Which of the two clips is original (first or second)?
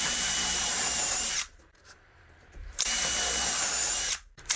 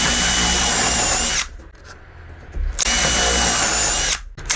second